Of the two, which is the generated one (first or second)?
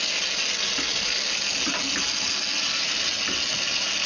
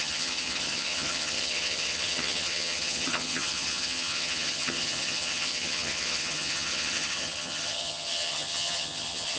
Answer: second